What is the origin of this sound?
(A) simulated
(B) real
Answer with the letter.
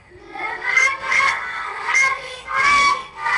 A